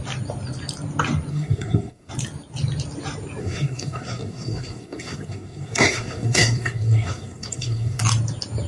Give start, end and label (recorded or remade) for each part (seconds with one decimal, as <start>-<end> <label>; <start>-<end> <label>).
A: 0.0-1.3 recorded; 1.3-2.1 remade; 2.1-3.4 recorded; 3.4-8.0 remade; 8.0-8.7 recorded